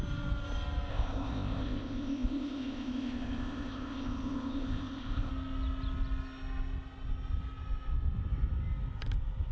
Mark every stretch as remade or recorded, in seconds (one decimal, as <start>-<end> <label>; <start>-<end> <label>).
0.0-0.9 recorded; 0.9-5.3 remade; 5.3-9.5 recorded